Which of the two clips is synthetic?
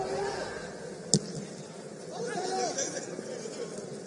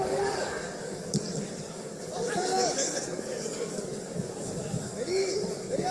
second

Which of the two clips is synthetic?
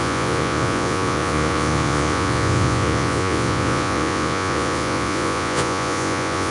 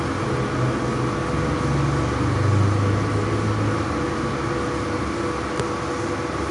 first